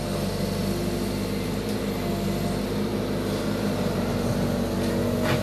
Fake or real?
real